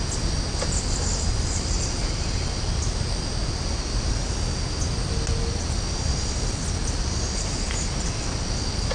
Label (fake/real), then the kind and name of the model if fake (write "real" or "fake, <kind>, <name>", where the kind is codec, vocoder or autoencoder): real